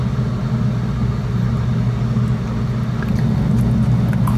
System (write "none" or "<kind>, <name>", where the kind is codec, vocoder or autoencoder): none